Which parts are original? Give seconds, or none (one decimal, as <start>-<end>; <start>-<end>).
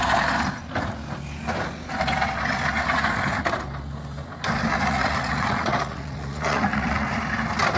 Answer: 0.0-4.7; 7.1-7.8